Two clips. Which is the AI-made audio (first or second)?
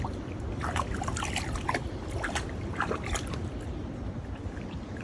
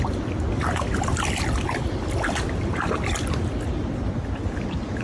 first